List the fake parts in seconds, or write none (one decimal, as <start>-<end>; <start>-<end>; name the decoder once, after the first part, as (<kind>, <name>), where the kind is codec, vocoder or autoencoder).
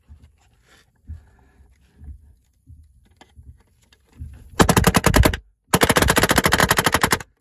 none